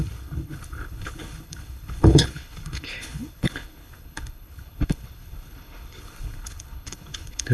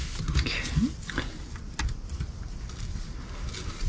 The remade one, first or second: first